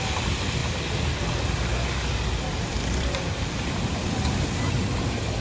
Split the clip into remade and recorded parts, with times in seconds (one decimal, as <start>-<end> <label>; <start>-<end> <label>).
0.0-2.7 recorded; 2.7-3.9 remade; 3.9-5.4 recorded